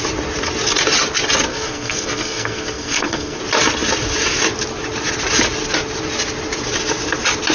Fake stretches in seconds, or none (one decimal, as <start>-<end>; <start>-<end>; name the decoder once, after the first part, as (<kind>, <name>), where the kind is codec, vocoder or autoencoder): 1.5-3.4 (codec, SNAC)